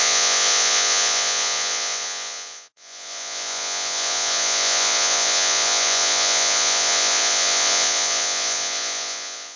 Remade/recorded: remade